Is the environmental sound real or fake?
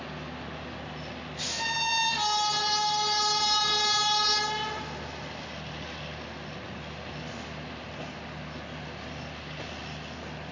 real